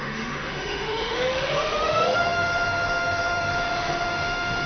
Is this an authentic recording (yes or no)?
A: no